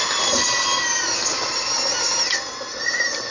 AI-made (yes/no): no